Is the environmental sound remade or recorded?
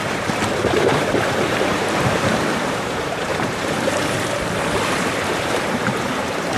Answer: remade